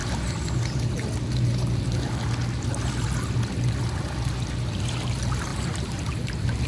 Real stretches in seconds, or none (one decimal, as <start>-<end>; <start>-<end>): 0.0-5.5